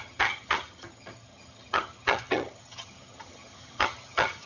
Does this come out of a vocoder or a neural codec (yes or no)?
yes